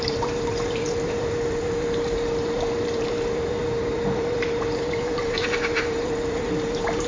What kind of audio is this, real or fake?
fake